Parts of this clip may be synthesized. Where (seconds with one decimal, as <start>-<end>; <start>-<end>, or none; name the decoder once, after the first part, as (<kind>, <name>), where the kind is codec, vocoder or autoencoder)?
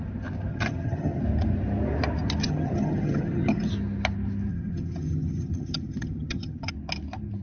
0.5-1.2 (vocoder, HiFi-GAN); 2.4-3.7; 4.5-6.7